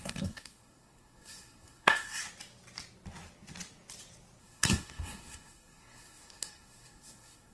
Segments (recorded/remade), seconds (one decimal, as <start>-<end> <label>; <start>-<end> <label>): 0.0-2.2 remade; 2.2-4.4 recorded; 4.4-7.5 remade